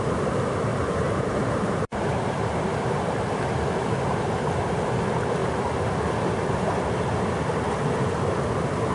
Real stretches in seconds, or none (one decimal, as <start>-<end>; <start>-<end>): 0.0-0.7; 3.4-8.9